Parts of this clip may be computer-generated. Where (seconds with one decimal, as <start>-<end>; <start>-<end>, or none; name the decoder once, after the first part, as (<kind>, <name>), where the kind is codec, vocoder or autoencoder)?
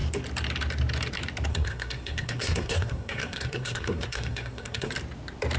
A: 1.5-4.9 (codec, SNAC)